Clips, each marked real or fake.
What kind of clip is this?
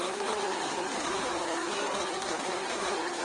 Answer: fake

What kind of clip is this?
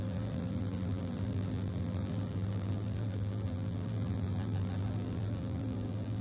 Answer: fake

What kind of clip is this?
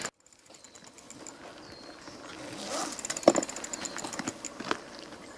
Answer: real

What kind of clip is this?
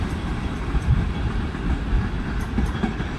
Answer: real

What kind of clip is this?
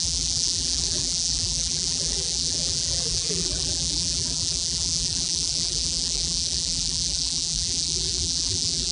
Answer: fake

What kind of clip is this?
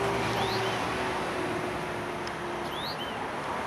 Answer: real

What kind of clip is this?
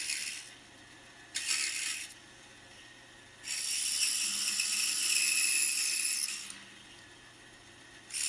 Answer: real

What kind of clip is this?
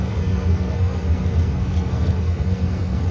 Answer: fake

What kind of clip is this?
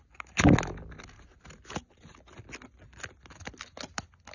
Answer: real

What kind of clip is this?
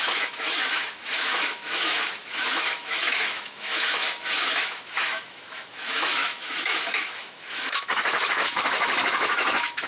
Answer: fake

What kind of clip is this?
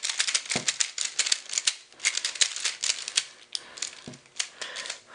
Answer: real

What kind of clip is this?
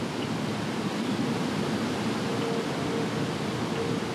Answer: real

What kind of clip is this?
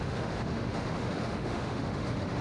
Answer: fake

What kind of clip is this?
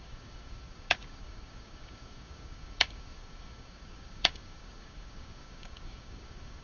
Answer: fake